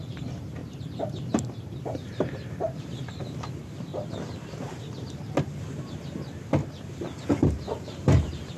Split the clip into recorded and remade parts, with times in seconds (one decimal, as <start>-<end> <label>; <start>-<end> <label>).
0.0-3.9 remade; 3.9-5.4 recorded; 5.4-8.6 remade